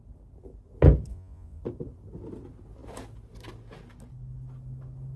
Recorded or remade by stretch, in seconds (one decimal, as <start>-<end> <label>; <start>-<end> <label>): 0.0-1.1 recorded; 1.1-1.6 remade; 1.6-5.2 recorded